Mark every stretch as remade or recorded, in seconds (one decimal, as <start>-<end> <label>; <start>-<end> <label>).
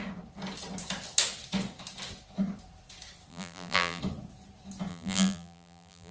0.0-3.3 recorded; 3.3-4.0 remade; 4.0-4.9 recorded; 4.9-6.1 remade